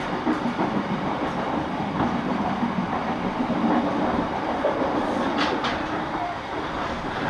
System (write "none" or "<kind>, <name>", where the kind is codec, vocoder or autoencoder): vocoder, BigVGAN v2